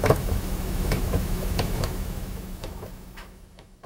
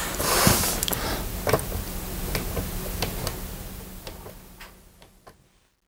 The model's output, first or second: first